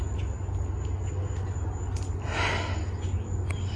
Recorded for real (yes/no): yes